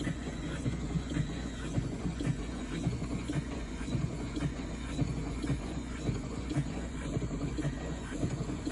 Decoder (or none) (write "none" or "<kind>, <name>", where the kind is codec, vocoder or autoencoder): vocoder, Vocos